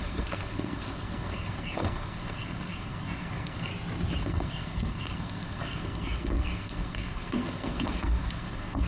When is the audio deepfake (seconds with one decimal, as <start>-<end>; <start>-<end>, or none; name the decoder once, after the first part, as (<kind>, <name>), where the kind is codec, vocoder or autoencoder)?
0.0-3.7 (codec, SNAC); 4.2-8.9